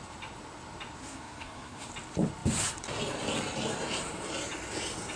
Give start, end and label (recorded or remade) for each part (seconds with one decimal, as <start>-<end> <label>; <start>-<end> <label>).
0.0-1.0 recorded; 1.0-1.9 remade; 1.9-5.2 recorded